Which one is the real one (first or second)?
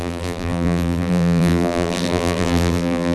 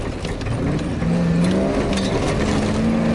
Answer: second